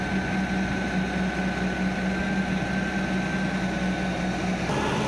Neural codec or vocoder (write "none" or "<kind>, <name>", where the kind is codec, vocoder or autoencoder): none